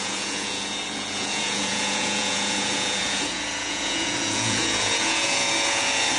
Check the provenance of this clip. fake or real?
fake